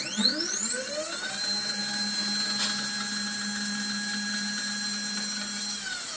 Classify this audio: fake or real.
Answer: real